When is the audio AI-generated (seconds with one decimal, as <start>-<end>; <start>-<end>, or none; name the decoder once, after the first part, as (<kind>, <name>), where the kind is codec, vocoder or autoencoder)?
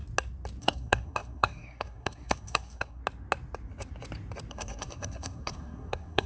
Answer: 0.6-3.0 (codec, SNAC); 4.5-6.3